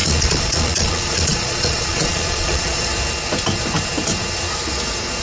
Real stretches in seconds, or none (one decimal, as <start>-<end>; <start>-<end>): 2.9-5.2

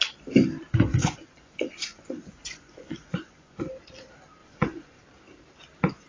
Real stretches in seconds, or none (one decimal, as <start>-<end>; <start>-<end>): 0.0-1.0; 3.6-4.4; 5.0-6.1

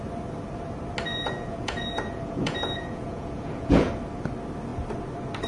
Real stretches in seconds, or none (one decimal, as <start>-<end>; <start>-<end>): 0.0-1.1; 3.9-5.5